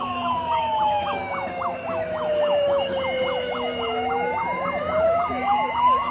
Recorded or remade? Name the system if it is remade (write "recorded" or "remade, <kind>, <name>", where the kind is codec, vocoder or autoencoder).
remade, autoencoder, DAC-VAE